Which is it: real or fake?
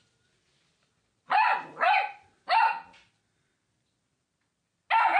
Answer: real